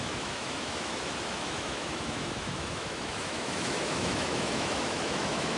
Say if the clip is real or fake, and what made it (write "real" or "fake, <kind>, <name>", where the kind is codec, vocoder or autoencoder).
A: fake, autoencoder, DAC-VAE